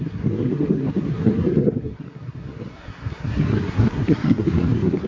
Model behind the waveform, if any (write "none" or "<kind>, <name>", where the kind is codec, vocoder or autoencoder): codec, SNAC